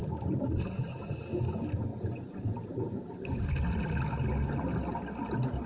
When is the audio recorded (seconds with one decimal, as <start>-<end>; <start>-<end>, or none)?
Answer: 1.2-1.9; 3.3-5.7